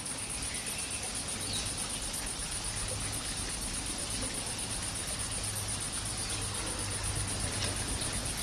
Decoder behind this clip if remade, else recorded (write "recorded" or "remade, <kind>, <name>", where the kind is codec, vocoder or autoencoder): recorded